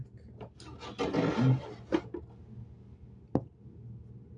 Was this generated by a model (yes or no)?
no